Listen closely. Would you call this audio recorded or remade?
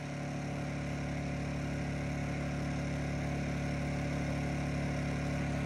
recorded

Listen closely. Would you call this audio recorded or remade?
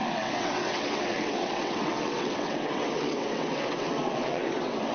remade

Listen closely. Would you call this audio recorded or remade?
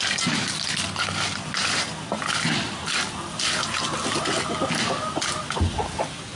recorded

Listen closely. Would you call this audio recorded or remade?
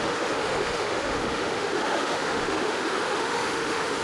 remade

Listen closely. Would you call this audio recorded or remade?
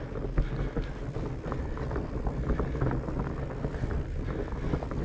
recorded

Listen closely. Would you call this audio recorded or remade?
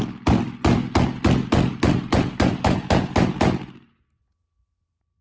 recorded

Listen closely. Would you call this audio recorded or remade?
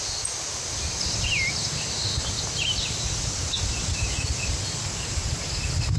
recorded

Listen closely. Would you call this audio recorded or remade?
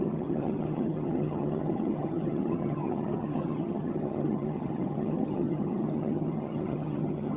remade